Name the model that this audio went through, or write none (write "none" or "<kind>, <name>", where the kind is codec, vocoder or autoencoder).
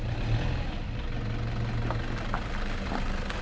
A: none